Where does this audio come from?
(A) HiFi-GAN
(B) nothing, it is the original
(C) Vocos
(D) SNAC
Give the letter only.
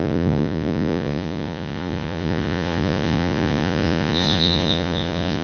C